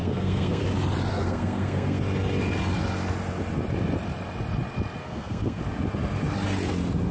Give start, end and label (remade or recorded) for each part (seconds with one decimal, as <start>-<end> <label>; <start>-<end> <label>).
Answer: 0.0-0.6 remade; 0.6-1.1 recorded; 1.1-2.0 remade; 2.0-5.0 recorded; 5.0-5.6 remade; 5.6-7.1 recorded